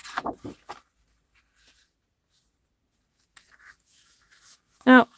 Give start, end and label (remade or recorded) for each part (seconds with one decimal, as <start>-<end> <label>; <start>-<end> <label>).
0.0-3.1 recorded; 3.1-5.2 remade